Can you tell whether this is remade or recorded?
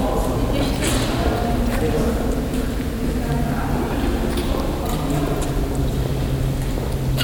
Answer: recorded